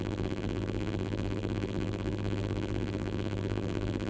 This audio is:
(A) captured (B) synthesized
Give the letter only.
B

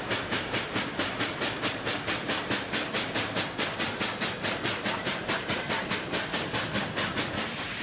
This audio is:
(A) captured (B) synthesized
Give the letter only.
A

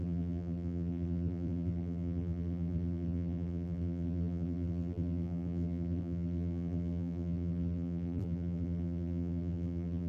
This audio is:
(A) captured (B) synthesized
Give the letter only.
B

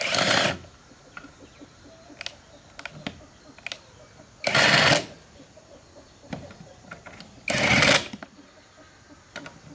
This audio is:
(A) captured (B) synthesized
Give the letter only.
A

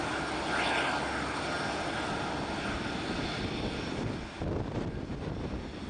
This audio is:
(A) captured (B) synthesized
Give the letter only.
A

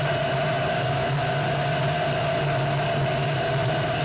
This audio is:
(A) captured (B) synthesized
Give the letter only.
A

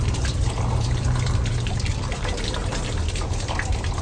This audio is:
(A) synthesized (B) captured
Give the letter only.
A